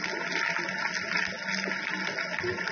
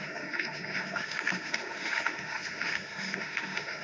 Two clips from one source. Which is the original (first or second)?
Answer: first